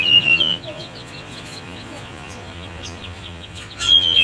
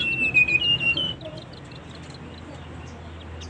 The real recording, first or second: second